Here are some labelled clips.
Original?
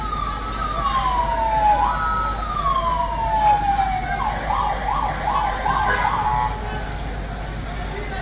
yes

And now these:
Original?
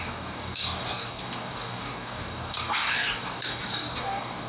no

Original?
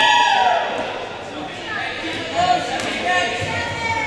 yes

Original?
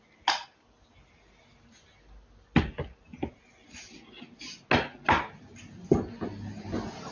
yes